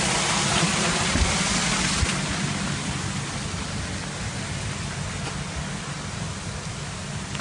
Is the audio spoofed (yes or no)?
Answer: no